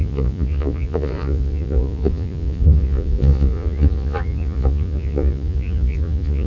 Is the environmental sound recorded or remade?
remade